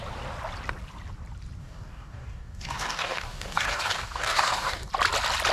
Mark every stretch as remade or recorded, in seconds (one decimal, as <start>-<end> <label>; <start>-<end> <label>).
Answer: 0.0-1.6 recorded; 1.6-4.9 remade; 4.9-5.5 recorded